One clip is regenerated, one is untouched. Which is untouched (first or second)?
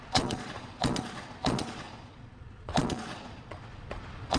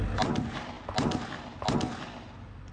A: second